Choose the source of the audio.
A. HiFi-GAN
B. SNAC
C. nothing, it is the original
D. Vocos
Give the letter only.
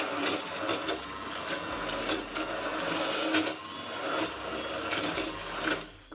C